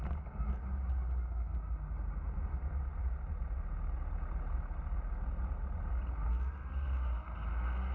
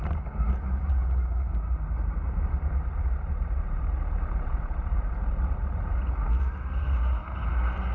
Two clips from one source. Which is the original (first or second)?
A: first